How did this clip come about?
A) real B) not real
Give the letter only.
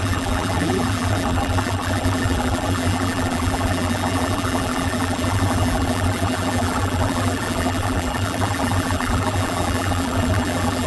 B